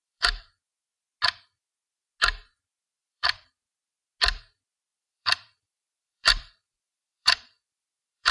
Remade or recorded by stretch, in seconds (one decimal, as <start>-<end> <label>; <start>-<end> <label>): 0.0-0.6 remade; 0.6-3.0 recorded; 3.0-3.5 remade; 3.5-4.9 recorded; 4.9-8.3 remade